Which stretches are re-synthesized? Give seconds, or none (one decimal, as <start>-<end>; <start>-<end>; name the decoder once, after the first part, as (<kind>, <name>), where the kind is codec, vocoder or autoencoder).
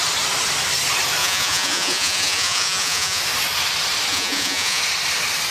1.2-3.2 (vocoder, Vocos); 4.1-4.8